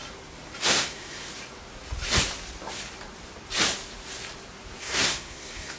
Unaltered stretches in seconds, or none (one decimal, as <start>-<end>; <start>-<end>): 0.0-0.6; 1.3-4.8